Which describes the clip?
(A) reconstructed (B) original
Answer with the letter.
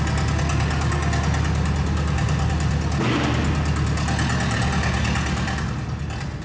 B